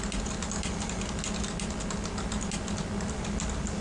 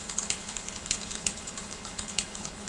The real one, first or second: first